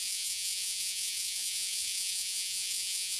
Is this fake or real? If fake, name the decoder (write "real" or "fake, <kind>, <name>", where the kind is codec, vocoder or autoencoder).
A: fake, vocoder, Vocos